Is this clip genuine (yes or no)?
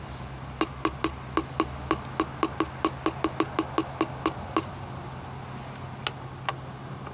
yes